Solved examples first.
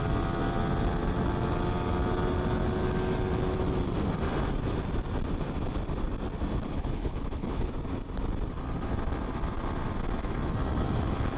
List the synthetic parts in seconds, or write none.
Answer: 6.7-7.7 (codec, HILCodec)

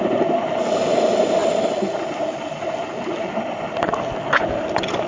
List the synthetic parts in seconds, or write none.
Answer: none

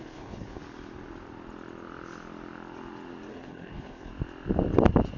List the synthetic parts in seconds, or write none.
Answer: 0.0-0.6 (codec, HILCodec); 3.3-4.1

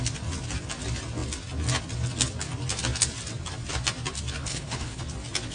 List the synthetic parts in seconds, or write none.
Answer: 4.4-5.0 (codec, HILCodec)

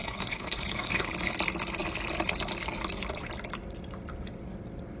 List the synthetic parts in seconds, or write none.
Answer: 0.0-1.1 (codec, HILCodec)